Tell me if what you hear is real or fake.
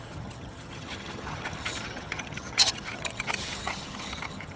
fake